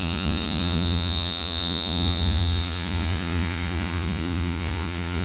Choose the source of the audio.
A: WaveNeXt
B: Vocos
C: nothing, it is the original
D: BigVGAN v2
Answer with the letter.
B